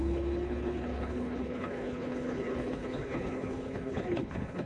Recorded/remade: remade